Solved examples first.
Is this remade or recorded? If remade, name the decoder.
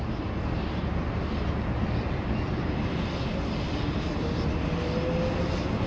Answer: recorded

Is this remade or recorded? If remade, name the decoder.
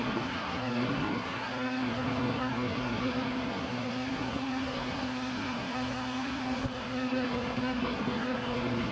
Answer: remade, codec, SNAC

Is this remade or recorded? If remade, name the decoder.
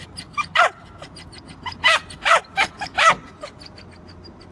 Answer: recorded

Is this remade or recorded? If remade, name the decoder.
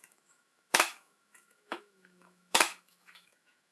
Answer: remade, autoencoder, DAC-VAE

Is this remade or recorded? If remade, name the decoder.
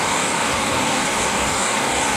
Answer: remade, codec, DAC